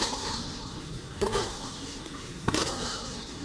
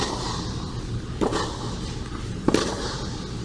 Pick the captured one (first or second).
second